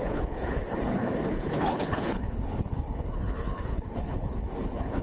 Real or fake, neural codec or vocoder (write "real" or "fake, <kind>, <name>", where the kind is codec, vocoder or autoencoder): fake, codec, HILCodec